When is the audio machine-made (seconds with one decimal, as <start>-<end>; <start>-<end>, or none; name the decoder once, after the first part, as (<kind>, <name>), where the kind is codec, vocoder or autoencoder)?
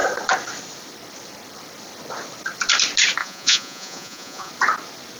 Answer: 3.2-4.5 (vocoder, Vocos)